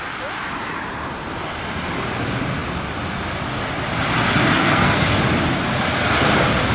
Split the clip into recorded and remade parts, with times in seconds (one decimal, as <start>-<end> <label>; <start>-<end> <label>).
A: 0.0-4.6 recorded; 4.6-5.2 remade; 5.2-6.7 recorded